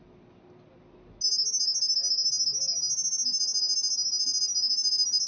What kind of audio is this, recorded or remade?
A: recorded